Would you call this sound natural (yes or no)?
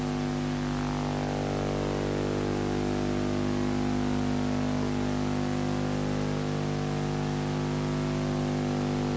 yes